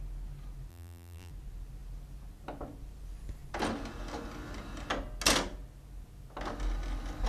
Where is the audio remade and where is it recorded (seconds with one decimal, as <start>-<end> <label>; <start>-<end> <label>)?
0.0-0.7 recorded; 0.7-1.3 remade; 1.3-7.3 recorded